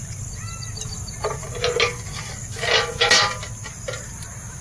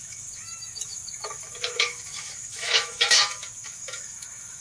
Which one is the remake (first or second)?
second